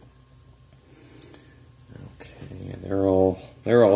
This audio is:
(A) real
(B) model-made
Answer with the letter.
A